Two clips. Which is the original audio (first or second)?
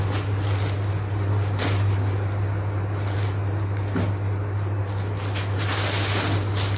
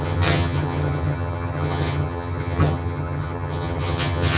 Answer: first